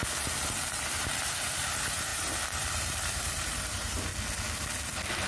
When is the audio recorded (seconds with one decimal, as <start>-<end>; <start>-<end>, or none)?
4.1-5.3